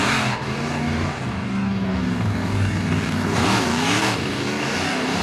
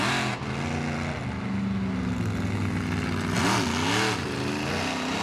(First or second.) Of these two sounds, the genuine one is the second